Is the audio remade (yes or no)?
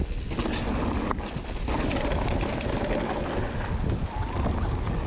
no